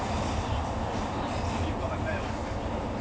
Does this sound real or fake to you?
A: real